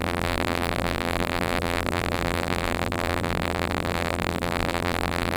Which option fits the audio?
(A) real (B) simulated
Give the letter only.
B